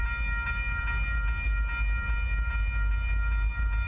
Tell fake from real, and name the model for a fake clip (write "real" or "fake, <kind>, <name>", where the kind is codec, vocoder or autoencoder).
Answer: real